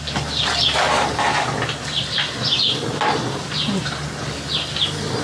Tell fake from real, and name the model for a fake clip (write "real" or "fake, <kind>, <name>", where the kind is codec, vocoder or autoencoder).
real